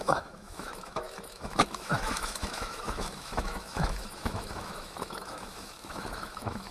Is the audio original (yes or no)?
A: no